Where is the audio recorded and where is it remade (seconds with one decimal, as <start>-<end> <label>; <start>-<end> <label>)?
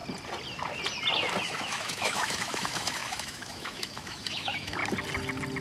0.0-1.4 recorded; 1.4-4.8 remade; 4.8-5.6 recorded